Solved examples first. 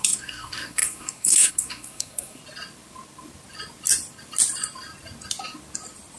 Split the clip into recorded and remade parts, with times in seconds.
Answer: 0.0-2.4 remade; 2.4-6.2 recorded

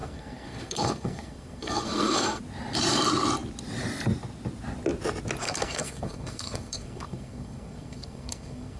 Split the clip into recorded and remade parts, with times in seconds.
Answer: 0.0-2.4 remade; 2.4-5.4 recorded; 5.4-8.8 remade

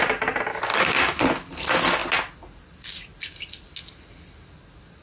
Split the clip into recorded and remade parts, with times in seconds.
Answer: 0.0-0.7 recorded; 0.7-1.2 remade; 1.2-5.0 recorded

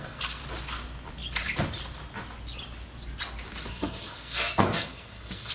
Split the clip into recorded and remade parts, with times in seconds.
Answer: 0.0-0.4 remade; 0.4-3.7 recorded; 3.7-5.5 remade

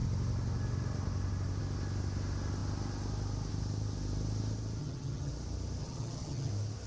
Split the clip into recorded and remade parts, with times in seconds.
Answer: 0.0-4.8 recorded; 4.8-5.3 remade; 5.3-5.8 recorded; 5.8-6.5 remade; 6.5-6.9 recorded